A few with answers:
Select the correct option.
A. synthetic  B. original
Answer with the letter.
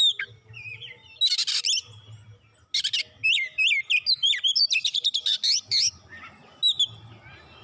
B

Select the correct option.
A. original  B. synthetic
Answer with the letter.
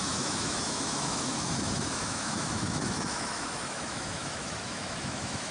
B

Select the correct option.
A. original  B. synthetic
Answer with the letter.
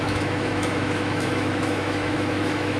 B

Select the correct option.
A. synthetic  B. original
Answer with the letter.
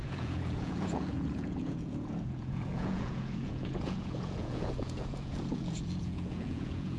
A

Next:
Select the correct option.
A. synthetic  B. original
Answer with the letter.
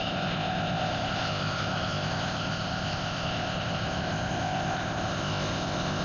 A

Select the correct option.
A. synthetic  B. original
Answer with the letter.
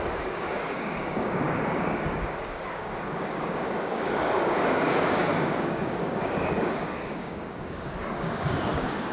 A